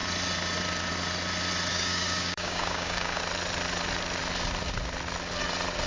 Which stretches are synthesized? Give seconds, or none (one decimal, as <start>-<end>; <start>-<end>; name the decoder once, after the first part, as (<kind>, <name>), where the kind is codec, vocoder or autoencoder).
1.7-3.2 (codec, DAC)